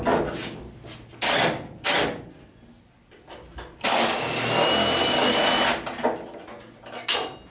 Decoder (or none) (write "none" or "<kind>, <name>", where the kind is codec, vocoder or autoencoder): none